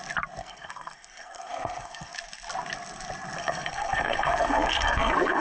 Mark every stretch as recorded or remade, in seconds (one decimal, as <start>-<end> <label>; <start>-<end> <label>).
0.0-0.4 recorded; 0.4-2.1 remade; 2.1-3.4 recorded; 3.4-5.4 remade